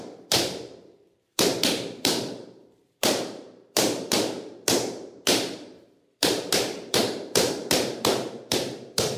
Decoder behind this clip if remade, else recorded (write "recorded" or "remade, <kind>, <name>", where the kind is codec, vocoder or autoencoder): remade, vocoder, BigVGAN v2